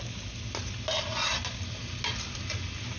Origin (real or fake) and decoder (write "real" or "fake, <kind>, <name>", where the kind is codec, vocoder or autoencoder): real